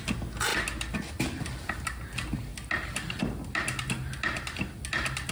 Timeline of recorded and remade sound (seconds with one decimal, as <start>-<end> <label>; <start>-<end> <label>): 0.0-5.3 recorded